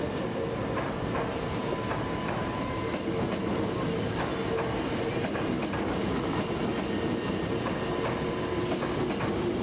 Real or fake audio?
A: real